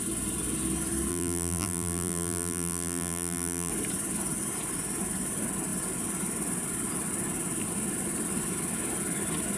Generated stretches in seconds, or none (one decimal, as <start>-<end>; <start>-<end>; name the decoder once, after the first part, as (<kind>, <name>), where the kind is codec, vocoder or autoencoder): 1.1-3.7 (vocoder, BigVGAN v2)